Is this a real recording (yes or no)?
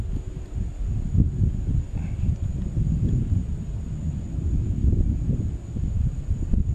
yes